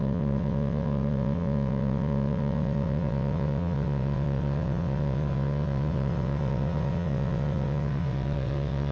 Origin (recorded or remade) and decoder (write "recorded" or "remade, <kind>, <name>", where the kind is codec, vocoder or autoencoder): remade, vocoder, WaveNeXt